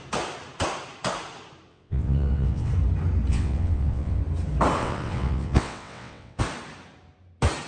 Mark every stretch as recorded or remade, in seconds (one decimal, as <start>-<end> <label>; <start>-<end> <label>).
0.0-1.7 recorded; 1.7-2.7 remade; 2.7-3.3 recorded; 3.3-4.2 remade; 4.2-4.8 recorded; 4.8-6.4 remade; 6.4-7.7 recorded